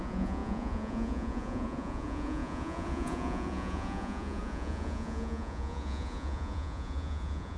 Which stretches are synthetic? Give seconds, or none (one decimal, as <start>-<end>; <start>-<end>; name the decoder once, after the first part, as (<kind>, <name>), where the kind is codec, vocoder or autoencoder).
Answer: 0.0-7.6 (vocoder, Vocos)